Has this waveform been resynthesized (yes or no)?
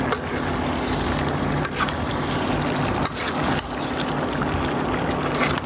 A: no